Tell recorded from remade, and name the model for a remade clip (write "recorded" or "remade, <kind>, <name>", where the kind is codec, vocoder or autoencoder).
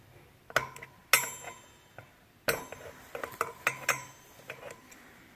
recorded